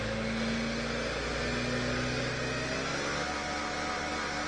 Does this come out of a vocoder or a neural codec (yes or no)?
no